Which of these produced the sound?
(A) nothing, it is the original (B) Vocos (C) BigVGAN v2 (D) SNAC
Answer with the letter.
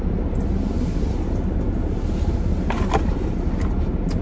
A